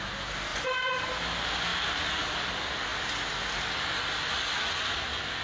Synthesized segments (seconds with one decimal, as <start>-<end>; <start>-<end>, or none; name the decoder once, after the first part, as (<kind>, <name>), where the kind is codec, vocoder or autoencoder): 0.5-1.0 (vocoder, Vocos)